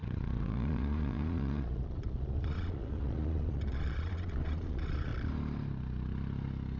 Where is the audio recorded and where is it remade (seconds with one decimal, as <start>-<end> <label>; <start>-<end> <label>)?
0.0-5.1 remade; 5.1-6.8 recorded